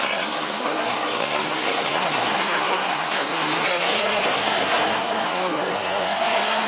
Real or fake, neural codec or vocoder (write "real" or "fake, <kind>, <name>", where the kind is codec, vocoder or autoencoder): fake, codec, SNAC